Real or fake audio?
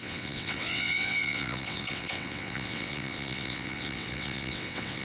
fake